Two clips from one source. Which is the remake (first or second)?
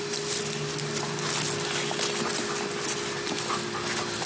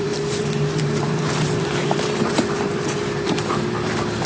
second